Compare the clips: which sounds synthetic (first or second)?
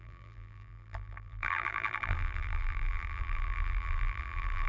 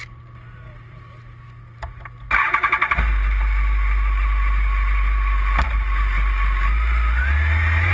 first